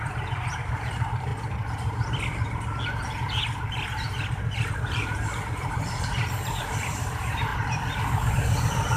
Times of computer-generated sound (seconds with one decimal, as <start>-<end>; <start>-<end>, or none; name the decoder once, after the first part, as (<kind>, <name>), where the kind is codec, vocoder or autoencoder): 0.0-1.3 (vocoder, BigVGAN v2); 4.7-7.5; 8.3-9.0